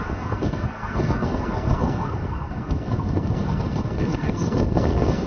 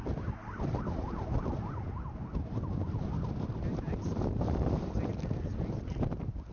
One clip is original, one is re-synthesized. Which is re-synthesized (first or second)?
first